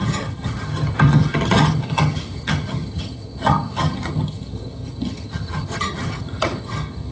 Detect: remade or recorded remade